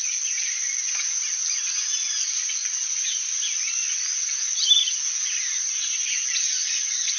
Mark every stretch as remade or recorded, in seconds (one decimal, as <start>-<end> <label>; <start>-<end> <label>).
0.0-7.2 recorded